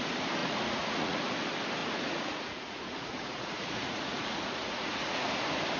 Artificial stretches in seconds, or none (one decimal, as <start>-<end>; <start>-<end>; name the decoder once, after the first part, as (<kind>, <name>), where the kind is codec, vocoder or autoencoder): 0.4-1.2 (vocoder, Vocos); 1.8-5.3